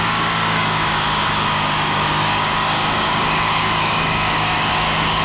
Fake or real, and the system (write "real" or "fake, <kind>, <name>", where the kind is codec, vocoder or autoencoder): fake, codec, DAC